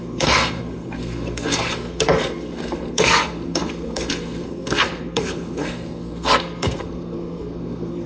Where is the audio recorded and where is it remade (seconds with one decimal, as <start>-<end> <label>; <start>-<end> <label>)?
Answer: 0.0-8.1 remade